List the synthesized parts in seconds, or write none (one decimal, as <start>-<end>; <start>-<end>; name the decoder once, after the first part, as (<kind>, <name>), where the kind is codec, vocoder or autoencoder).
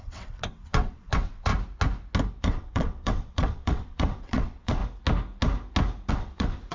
0.0-1.5 (vocoder, WaveNeXt); 2.4-4.8; 6.1-6.7